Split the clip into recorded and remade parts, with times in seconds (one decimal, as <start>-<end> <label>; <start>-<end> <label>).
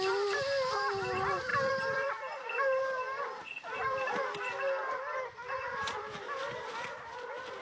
0.0-1.5 recorded; 1.5-2.1 remade; 2.1-5.4 recorded; 5.4-6.5 remade; 6.5-7.6 recorded